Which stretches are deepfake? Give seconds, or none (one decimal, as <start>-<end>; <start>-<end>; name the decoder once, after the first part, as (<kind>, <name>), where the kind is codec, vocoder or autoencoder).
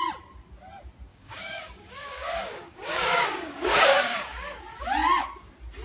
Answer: 1.1-4.6 (codec, DAC)